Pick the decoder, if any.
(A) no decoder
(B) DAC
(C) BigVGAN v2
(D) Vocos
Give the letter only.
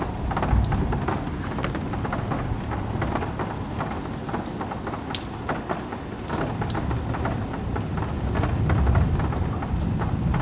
A